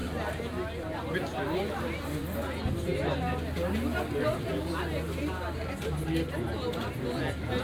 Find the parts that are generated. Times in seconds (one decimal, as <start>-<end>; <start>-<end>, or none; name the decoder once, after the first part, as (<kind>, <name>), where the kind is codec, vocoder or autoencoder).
none

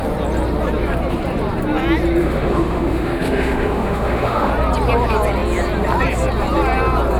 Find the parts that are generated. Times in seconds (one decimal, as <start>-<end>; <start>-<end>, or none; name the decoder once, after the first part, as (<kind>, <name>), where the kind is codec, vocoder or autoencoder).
2.2-4.5 (autoencoder, DAC-VAE)

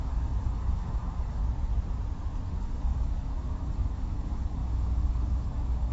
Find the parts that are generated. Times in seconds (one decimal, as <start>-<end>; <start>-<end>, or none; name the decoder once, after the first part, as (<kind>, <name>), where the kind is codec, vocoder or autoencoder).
0.0-1.4 (codec, DAC); 2.5-5.9

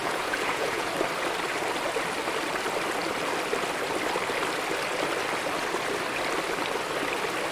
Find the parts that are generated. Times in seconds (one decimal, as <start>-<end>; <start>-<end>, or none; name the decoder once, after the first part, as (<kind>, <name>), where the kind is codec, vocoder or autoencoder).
0.0-0.9 (vocoder, Vocos)

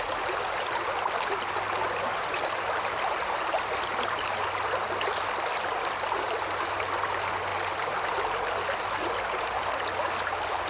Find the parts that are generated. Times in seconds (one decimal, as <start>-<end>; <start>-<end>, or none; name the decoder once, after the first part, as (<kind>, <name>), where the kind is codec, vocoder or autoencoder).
none